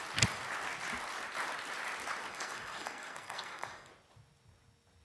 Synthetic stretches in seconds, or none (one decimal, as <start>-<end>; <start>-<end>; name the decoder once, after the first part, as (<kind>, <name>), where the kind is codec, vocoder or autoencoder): 2.3-3.9 (codec, SNAC)